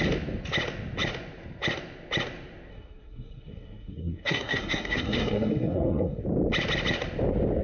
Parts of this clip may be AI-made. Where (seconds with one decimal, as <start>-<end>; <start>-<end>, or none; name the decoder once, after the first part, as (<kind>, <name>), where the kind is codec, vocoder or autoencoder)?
2.7-6.2 (codec, SNAC)